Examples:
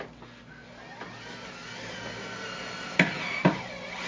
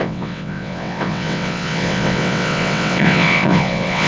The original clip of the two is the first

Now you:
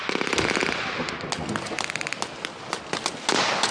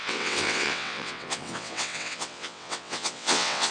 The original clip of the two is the first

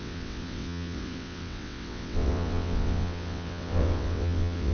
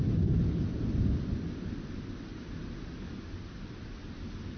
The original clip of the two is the second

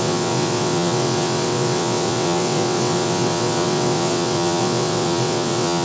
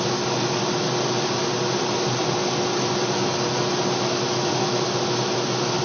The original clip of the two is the second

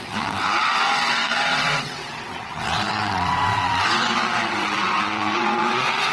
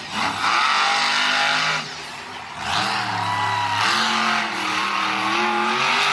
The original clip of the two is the second